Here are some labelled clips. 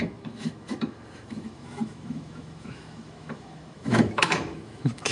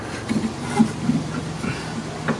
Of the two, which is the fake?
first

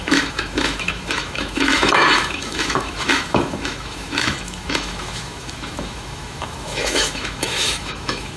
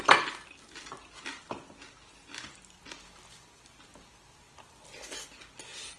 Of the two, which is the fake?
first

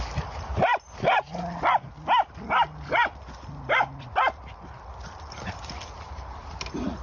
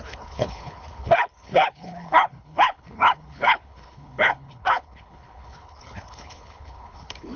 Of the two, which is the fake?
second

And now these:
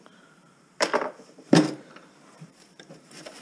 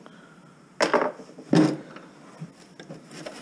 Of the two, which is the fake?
first